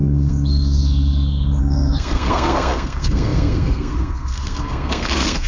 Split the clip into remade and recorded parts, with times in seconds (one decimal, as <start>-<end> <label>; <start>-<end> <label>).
0.0-5.5 remade